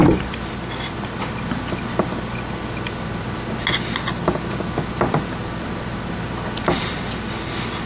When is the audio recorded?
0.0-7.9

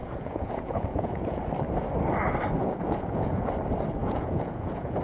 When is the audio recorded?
1.5-2.6; 3.4-4.0

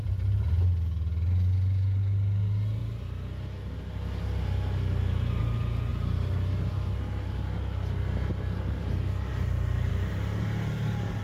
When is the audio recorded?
0.0-11.2

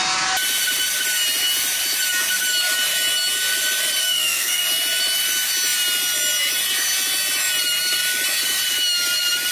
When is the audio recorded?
0.0-4.0; 4.6-9.5

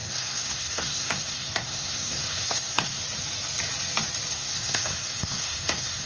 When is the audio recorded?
3.0-4.3

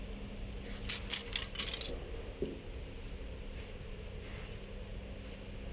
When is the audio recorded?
0.0-5.7

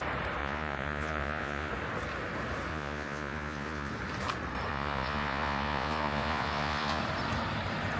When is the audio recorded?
0.0-0.4; 1.7-2.7; 3.9-4.7; 7.0-8.0

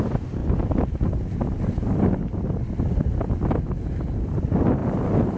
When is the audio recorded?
0.0-0.4; 2.8-4.8